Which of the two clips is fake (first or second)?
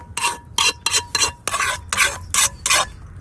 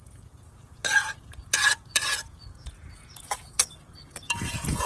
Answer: second